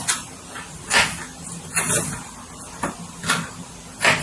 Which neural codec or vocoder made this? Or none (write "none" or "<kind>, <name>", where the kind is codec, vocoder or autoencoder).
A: none